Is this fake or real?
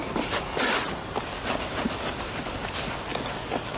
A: real